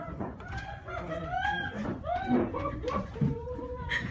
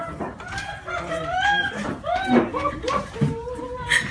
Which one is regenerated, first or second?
first